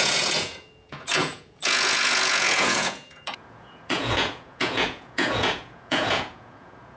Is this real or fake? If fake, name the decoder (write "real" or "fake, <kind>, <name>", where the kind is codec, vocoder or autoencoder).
fake, vocoder, Vocos